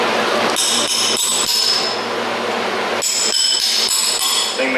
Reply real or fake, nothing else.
real